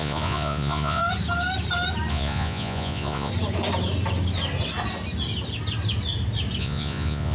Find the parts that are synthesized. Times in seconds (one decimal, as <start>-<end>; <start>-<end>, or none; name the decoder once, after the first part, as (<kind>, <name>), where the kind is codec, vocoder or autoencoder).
0.0-1.0 (vocoder, Vocos); 2.1-3.3; 6.6-7.3